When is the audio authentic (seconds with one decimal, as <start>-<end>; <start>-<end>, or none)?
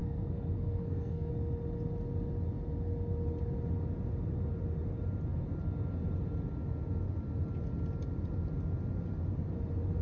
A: 1.3-10.0